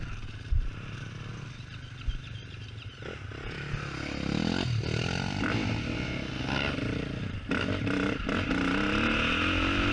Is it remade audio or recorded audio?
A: recorded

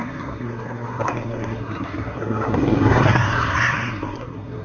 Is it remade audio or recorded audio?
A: remade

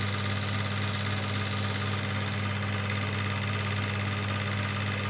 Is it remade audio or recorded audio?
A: recorded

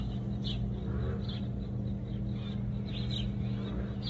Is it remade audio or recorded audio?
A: recorded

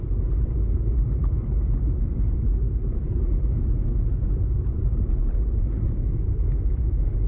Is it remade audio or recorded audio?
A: remade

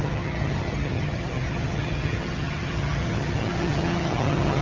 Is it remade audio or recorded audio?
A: remade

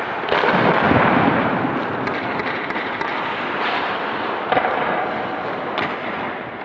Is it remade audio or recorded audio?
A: recorded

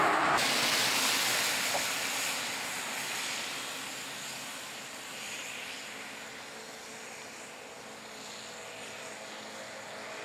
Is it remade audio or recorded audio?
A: recorded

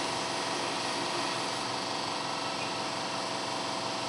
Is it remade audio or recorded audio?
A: recorded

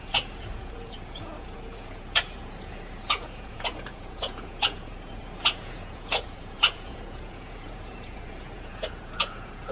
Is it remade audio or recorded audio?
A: remade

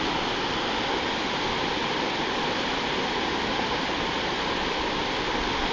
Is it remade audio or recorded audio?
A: recorded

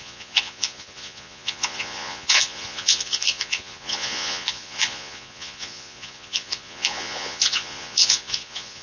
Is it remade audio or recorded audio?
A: remade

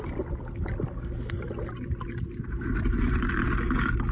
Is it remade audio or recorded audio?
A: recorded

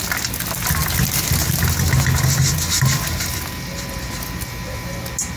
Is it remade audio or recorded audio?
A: recorded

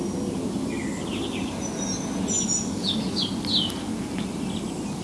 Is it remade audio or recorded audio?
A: recorded